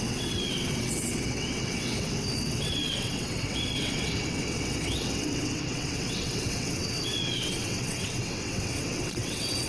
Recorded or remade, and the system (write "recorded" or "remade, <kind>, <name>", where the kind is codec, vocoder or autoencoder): remade, vocoder, WaveNeXt